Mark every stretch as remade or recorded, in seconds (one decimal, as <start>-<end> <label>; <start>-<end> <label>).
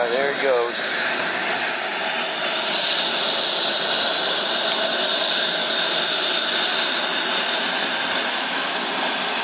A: 0.0-9.4 recorded